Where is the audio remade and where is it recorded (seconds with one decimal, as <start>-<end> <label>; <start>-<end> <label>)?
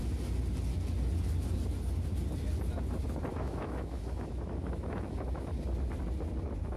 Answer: 0.0-3.3 recorded; 3.3-5.5 remade; 5.5-6.8 recorded